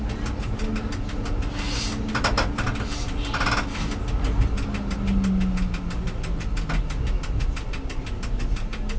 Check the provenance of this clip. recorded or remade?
recorded